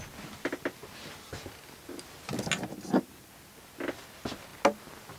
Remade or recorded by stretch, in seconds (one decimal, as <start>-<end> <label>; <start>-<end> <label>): 0.0-5.2 recorded